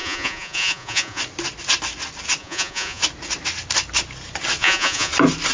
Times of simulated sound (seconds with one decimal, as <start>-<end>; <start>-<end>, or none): 0.0-1.2; 2.4-3.0; 4.6-5.1